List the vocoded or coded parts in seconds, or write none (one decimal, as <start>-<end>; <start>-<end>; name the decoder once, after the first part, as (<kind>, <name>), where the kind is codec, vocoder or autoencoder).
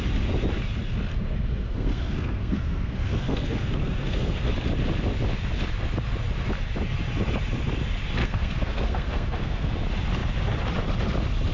1.1-4.5 (codec, SNAC); 8.2-9.7